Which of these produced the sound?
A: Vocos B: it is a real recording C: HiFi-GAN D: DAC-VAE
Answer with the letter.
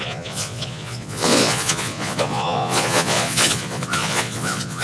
A